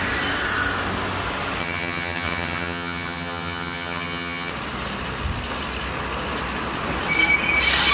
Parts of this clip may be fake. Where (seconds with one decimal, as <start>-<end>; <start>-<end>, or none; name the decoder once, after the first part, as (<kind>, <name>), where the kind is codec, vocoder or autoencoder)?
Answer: 1.6-4.5 (vocoder, HiFi-GAN)